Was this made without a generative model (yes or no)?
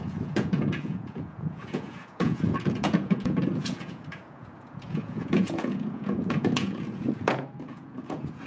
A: no